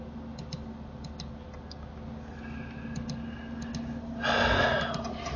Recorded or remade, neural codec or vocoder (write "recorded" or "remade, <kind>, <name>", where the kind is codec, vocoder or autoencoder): recorded